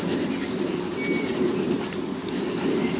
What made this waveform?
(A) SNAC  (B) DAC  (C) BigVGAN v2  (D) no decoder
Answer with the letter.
D